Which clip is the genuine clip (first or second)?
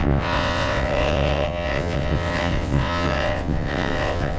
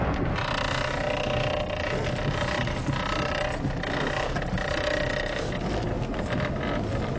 second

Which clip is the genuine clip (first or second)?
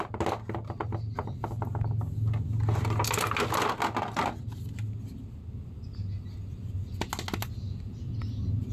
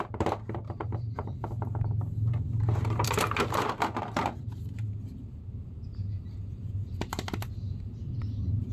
first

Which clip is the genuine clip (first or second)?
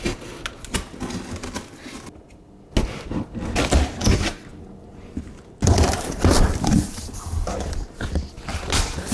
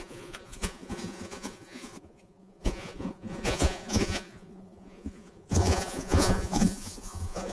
first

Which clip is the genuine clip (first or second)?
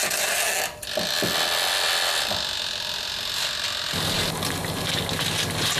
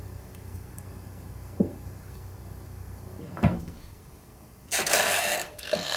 first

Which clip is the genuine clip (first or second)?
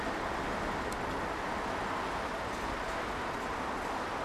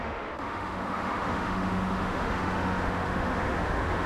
first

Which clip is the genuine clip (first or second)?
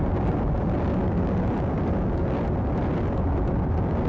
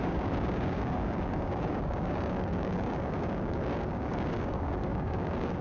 first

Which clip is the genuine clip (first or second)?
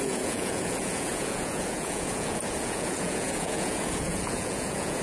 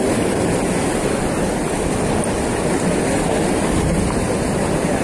second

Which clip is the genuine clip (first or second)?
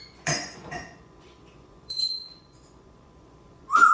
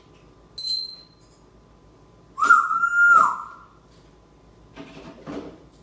second